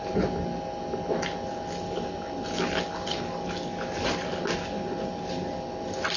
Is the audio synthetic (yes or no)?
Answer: no